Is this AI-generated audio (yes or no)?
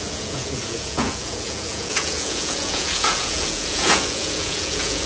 yes